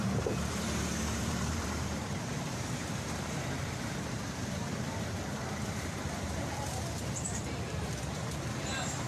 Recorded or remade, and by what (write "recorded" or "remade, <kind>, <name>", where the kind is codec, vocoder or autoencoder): remade, vocoder, BigVGAN v2